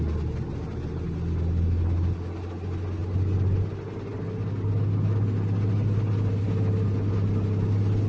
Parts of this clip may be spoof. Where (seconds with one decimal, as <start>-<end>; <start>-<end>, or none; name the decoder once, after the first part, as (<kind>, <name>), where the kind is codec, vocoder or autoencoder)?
none